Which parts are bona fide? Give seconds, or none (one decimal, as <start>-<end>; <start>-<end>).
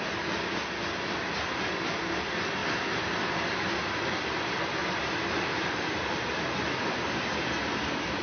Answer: 0.0-2.6; 3.5-8.2